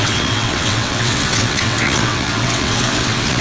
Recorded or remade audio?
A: remade